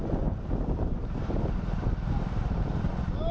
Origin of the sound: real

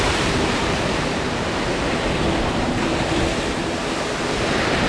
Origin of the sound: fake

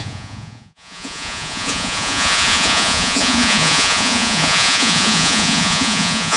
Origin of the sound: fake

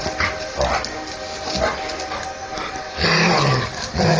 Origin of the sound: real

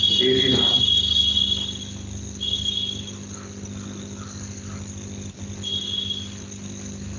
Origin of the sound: real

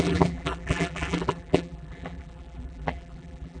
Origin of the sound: fake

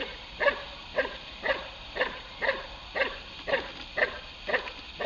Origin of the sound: real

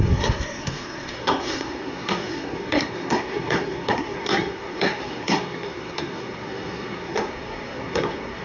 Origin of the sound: fake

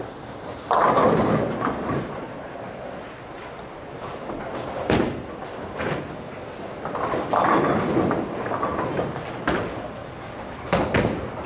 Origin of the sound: real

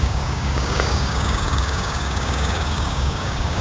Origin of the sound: fake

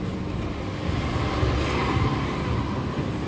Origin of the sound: real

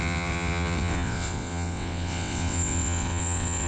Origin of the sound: fake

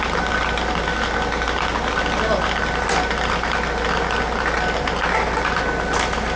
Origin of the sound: real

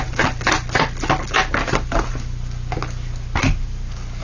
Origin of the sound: real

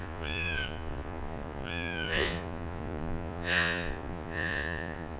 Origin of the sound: fake